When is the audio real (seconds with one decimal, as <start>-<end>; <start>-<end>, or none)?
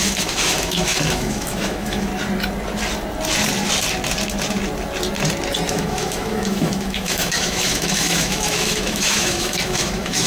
2.1-5.7